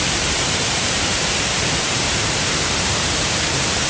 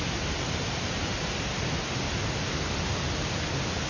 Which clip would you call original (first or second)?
second